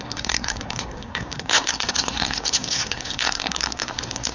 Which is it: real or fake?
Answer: fake